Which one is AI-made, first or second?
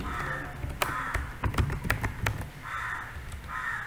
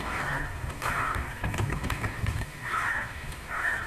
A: second